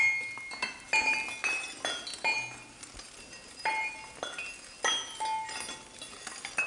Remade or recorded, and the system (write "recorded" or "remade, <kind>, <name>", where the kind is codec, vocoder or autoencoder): recorded